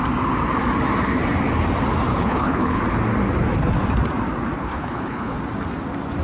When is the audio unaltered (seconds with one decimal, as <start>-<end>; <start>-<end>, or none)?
0.0-2.1; 2.8-4.6; 5.4-6.2